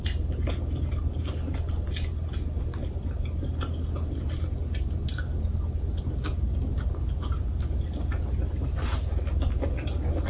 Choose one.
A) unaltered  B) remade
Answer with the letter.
A